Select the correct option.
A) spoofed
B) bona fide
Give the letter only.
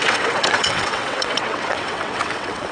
A